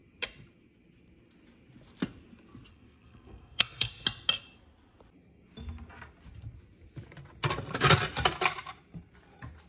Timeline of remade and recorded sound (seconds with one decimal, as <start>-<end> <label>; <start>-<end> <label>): 0.0-2.7 recorded; 2.7-3.9 remade; 3.9-9.7 recorded